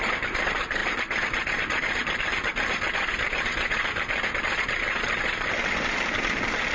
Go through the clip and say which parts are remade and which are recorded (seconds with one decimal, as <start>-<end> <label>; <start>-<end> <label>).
0.0-6.7 recorded